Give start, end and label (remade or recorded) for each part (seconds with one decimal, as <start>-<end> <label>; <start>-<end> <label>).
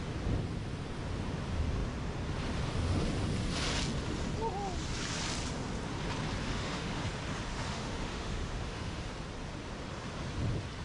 0.0-6.4 recorded; 6.4-7.0 remade; 7.0-7.5 recorded; 7.5-9.1 remade; 9.1-10.8 recorded